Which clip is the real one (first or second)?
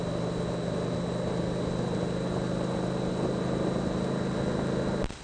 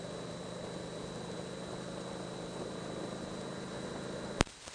first